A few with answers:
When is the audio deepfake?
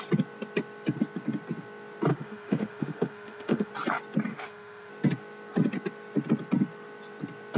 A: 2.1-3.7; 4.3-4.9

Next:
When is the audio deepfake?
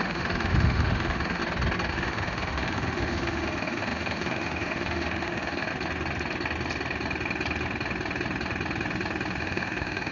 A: 0.0-1.4; 1.9-5.7; 9.4-10.1